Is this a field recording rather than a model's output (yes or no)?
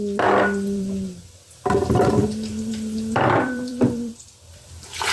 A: no